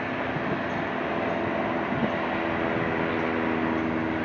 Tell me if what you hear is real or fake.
real